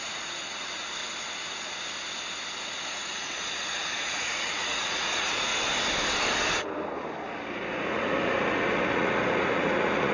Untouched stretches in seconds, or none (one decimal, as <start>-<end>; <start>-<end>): 1.0-2.6; 5.5-7.7

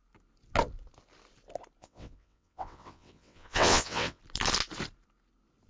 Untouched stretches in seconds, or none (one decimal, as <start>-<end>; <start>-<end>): 0.0-1.8; 4.2-5.7

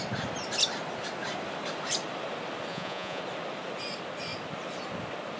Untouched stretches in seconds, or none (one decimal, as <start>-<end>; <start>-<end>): 0.0-2.7; 3.2-5.4

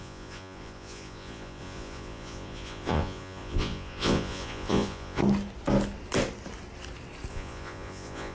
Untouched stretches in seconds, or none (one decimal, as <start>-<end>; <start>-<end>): 5.2-7.3

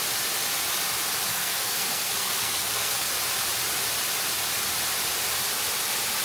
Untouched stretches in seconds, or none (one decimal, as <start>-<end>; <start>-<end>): 0.0-1.3; 3.1-6.2